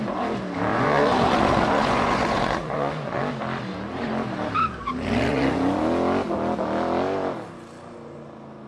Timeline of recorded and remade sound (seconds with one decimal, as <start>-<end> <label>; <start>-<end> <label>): 0.0-0.7 recorded; 0.7-3.2 remade; 3.2-5.3 recorded; 5.3-5.8 remade; 5.8-8.7 recorded